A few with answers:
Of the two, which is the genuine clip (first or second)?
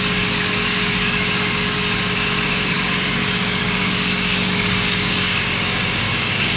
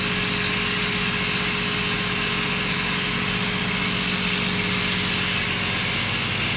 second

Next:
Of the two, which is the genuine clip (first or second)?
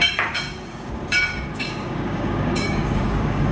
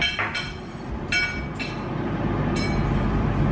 second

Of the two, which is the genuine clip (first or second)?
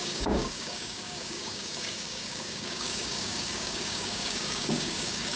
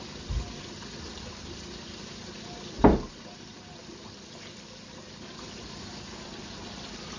second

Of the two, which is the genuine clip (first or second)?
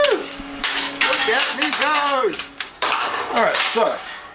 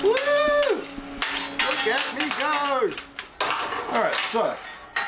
second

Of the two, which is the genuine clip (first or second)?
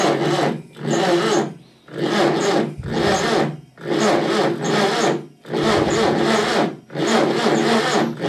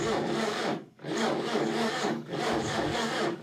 first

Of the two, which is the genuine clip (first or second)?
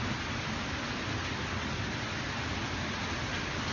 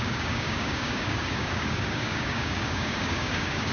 first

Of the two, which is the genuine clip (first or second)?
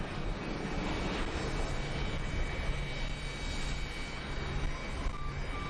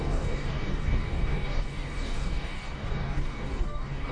first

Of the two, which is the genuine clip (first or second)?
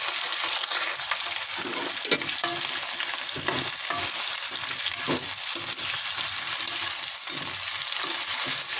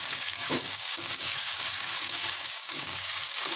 first